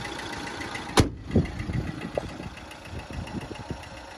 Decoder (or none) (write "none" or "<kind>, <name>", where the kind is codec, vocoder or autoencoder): none